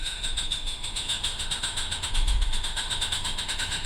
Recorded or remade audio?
remade